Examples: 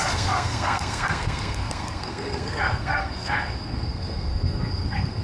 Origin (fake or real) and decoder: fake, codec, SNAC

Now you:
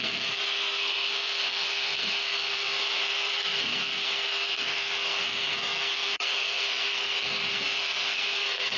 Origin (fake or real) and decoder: fake, codec, SNAC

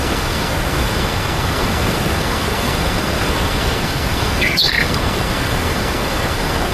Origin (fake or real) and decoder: fake, codec, SNAC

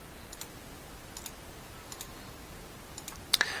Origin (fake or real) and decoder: real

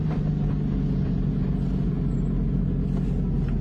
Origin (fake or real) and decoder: real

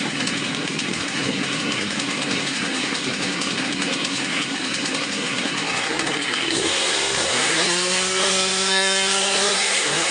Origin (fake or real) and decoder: fake, codec, SNAC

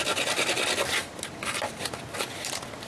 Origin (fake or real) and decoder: real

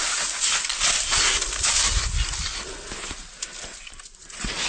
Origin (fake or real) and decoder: real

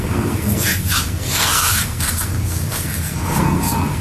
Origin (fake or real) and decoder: fake, codec, SNAC